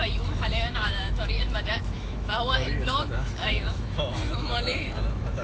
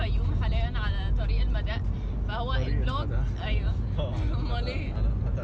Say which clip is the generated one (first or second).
first